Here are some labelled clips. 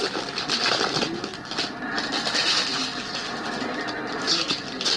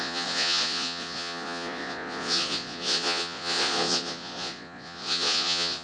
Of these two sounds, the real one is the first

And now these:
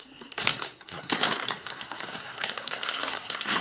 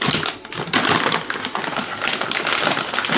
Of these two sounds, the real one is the second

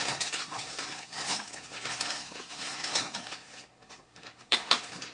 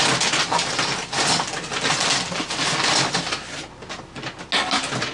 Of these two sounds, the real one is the second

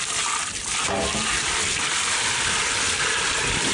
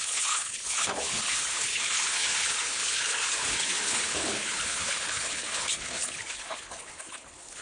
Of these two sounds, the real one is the first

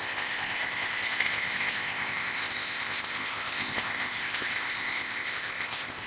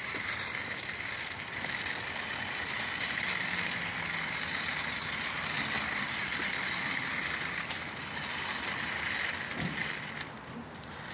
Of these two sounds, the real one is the second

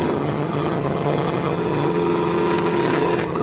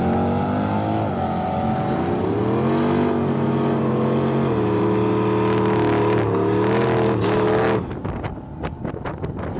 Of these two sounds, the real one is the second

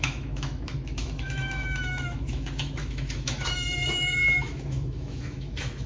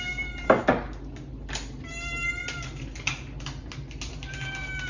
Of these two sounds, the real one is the second